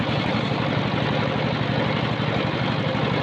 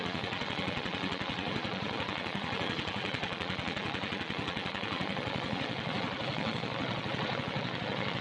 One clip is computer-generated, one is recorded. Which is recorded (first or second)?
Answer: first